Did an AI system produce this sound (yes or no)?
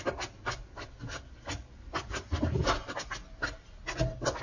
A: no